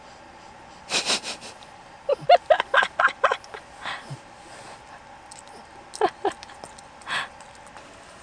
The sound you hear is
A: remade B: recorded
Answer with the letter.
B